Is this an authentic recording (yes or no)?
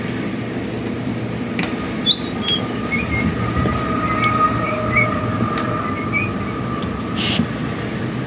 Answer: yes